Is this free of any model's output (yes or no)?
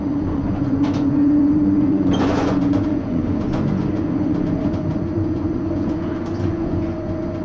no